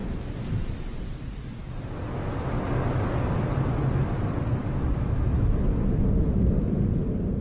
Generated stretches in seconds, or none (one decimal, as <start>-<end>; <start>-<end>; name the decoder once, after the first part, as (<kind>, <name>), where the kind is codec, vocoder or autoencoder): 4.6-5.7 (autoencoder, DAC-VAE)